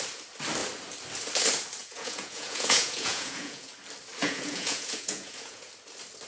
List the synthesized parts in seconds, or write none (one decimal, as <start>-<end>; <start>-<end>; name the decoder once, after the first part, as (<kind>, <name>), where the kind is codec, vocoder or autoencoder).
1.8-3.7 (vocoder, Vocos); 4.2-5.7